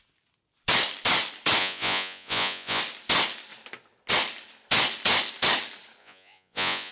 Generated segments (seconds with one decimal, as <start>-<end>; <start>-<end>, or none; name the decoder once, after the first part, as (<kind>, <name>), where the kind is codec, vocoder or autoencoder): 1.6-2.8 (vocoder, Vocos); 6.0-6.9